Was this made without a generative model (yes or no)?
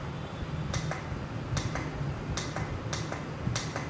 yes